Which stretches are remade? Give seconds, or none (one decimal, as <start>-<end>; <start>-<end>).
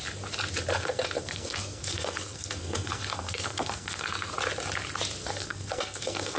0.7-4.3; 5.2-6.4